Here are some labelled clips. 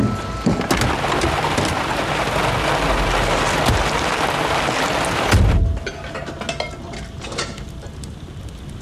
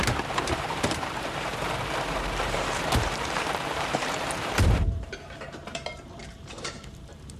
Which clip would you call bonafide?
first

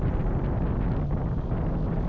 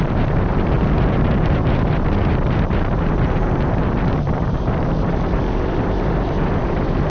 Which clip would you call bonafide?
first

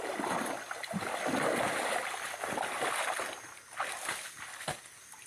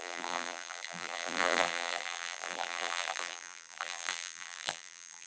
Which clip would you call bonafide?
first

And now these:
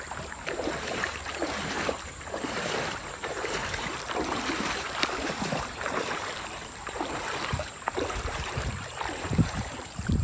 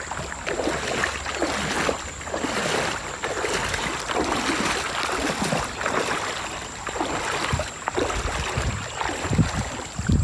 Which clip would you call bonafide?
second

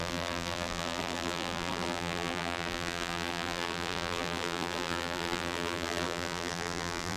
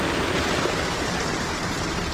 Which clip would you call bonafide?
second